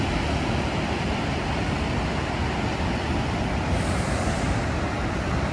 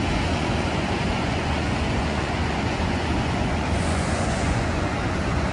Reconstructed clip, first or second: second